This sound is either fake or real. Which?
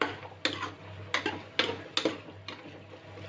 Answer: real